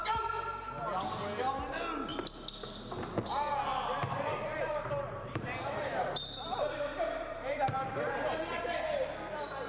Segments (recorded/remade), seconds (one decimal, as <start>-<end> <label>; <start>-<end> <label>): 0.0-3.7 recorded; 3.7-8.4 remade; 8.4-9.7 recorded